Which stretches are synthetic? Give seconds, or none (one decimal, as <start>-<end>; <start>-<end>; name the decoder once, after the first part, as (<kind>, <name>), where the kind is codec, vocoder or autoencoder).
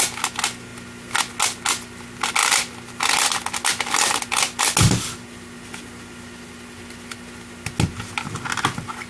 none